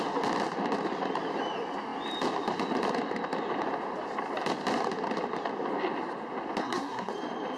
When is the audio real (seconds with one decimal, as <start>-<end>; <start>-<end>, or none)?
0.0-6.6; 7.1-7.6